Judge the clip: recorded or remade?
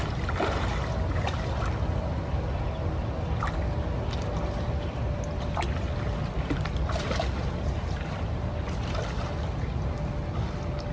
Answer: recorded